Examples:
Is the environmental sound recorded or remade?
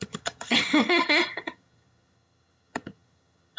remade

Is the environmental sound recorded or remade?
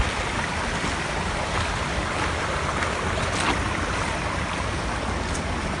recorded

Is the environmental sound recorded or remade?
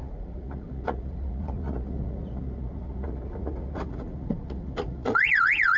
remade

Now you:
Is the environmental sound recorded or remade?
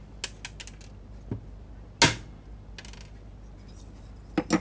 recorded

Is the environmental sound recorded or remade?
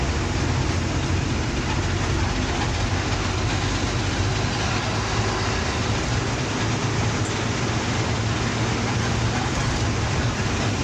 recorded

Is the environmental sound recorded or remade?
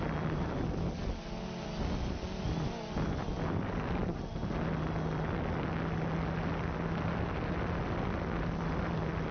recorded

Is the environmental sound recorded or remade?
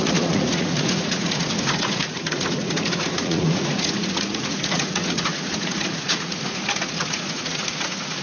remade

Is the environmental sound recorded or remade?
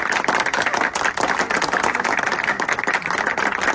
recorded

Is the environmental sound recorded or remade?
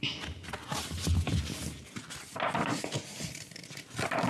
recorded